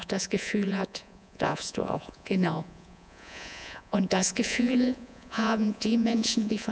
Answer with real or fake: fake